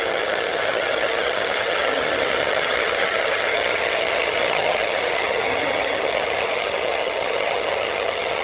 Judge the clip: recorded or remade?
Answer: remade